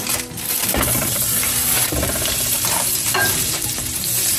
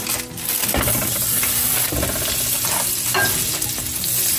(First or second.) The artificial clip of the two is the first